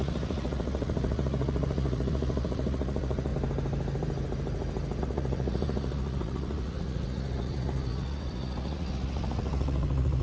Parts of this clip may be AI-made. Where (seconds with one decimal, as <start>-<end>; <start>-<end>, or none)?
0.0-3.3; 5.0-10.2